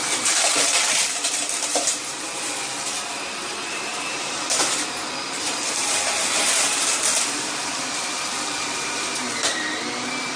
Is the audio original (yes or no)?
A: no